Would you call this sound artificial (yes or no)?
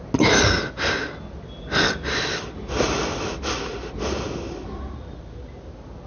no